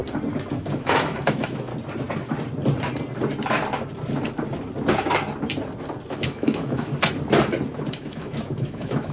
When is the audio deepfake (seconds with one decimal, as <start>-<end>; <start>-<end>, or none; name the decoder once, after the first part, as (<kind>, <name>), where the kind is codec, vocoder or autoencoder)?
0.5-1.7 (autoencoder, DAC-VAE); 6.1-6.9; 7.9-9.1